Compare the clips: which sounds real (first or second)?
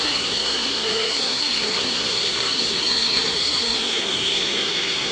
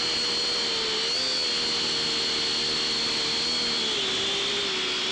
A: second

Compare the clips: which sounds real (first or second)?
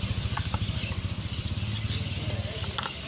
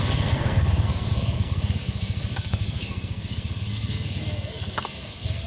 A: first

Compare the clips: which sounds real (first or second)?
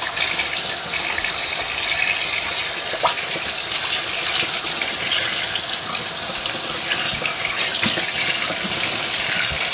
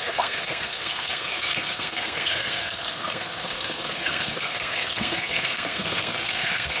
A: first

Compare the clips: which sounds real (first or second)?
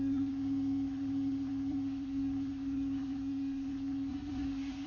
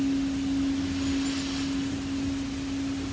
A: second